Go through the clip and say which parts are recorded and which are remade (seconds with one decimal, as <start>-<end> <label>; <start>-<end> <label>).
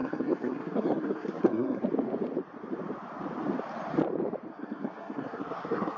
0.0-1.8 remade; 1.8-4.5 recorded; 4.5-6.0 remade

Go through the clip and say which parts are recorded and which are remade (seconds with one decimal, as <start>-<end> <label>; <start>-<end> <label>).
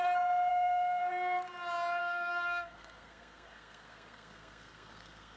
0.0-0.5 recorded; 0.5-1.0 remade; 1.0-2.0 recorded; 2.0-5.4 remade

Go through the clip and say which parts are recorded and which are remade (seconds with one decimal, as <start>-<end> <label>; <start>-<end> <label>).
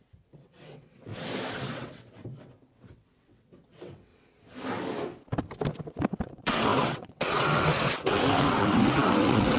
0.0-1.1 remade; 1.1-1.7 recorded; 1.7-4.1 remade; 4.1-5.8 recorded; 5.8-9.6 remade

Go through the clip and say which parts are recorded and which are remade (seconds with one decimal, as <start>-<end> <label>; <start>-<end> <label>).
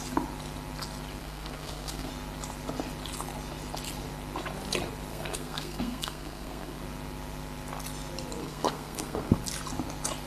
0.0-1.2 recorded; 1.2-2.1 remade; 2.1-5.1 recorded; 5.1-6.8 remade; 6.8-8.4 recorded; 8.4-9.3 remade; 9.3-10.3 recorded